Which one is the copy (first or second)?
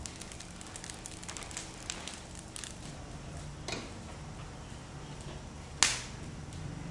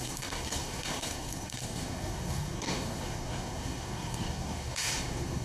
second